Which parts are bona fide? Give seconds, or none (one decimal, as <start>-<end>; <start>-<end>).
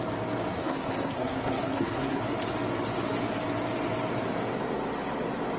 0.0-0.5; 2.2-5.6